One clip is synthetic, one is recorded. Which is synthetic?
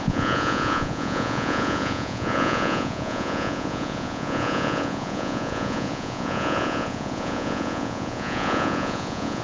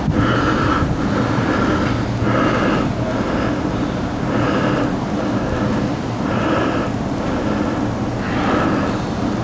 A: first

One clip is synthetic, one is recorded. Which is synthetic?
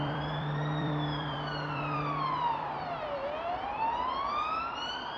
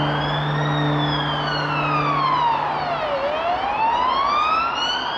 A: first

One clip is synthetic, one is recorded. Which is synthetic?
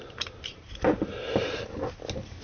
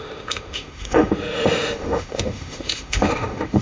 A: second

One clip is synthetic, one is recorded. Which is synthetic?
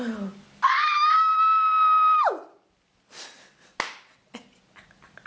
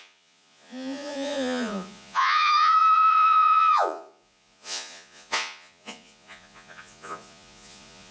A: second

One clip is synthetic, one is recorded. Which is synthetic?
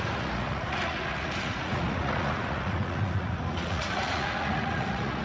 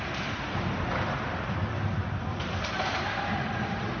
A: first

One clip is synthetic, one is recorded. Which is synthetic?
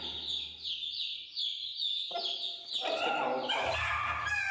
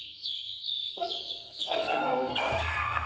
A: second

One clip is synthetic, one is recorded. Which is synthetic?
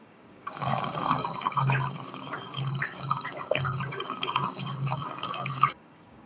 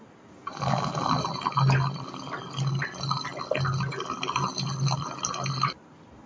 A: first